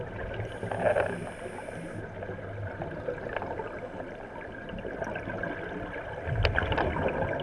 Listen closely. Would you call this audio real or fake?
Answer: real